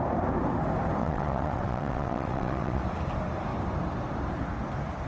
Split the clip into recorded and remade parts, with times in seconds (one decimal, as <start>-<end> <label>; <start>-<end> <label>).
0.0-1.0 recorded; 1.0-2.8 remade; 2.8-5.1 recorded